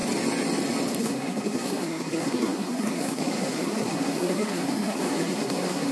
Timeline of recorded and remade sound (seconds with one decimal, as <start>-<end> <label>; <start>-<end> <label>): 0.0-1.0 recorded; 1.0-5.9 remade